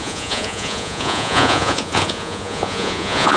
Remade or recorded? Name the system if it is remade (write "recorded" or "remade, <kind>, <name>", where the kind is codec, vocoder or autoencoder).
remade, vocoder, Vocos